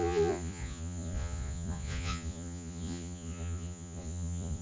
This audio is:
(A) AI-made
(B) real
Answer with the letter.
A